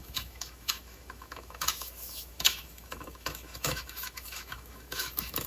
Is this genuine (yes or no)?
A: no